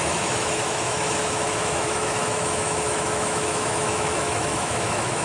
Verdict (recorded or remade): remade